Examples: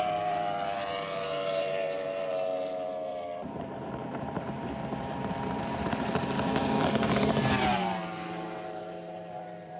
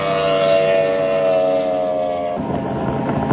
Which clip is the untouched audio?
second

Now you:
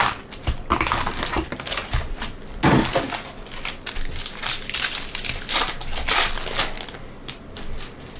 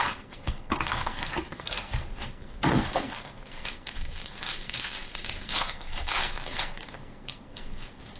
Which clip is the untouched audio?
first